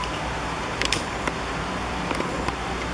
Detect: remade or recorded remade